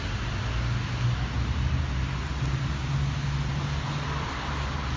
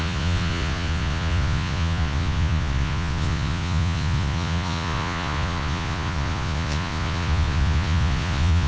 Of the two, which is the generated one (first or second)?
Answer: second